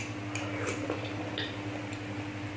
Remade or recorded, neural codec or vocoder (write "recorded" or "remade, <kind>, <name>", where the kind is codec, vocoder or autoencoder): recorded